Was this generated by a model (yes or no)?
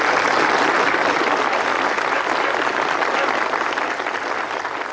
no